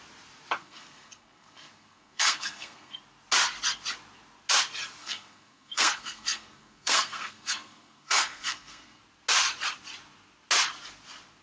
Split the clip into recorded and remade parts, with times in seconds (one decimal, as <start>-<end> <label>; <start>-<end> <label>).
0.0-0.6 recorded; 0.6-3.0 remade; 3.0-5.0 recorded; 5.0-9.0 remade; 9.0-11.4 recorded